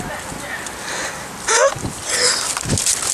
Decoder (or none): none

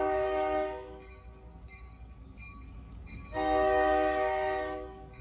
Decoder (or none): codec, DAC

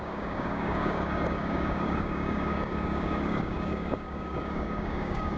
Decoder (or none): codec, DAC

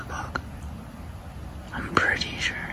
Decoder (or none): none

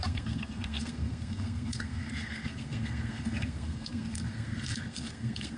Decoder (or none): codec, SNAC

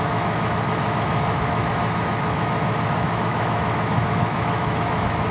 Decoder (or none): autoencoder, DAC-VAE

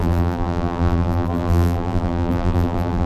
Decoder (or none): vocoder, BigVGAN v2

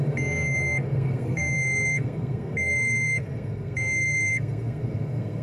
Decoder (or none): codec, SNAC